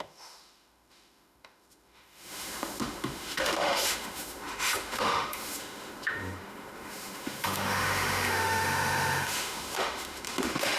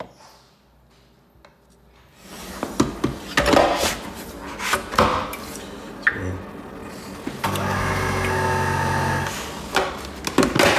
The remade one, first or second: first